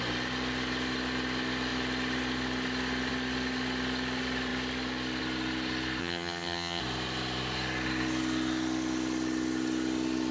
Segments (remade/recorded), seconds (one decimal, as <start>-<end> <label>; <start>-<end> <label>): 0.0-6.0 recorded; 6.0-6.8 remade; 6.8-10.3 recorded